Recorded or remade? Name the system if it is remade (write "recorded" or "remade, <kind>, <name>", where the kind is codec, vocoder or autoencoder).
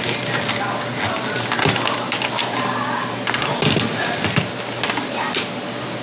recorded